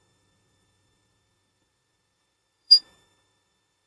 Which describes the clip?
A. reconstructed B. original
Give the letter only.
A